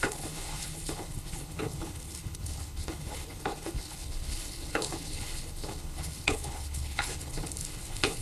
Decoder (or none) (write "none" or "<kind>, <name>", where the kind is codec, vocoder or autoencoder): codec, HILCodec